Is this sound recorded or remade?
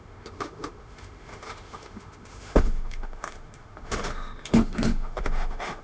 remade